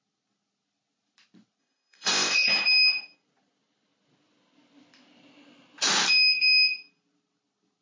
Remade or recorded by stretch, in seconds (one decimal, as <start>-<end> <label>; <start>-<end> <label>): 0.0-1.6 recorded; 1.6-2.5 remade; 2.5-7.8 recorded